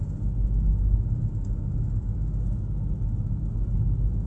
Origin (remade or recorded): recorded